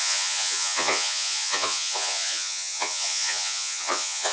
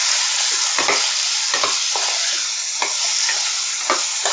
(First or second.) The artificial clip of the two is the first